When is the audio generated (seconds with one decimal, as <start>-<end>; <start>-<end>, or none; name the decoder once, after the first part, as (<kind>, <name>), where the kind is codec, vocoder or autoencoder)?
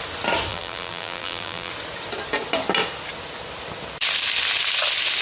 0.5-1.7 (vocoder, BigVGAN v2)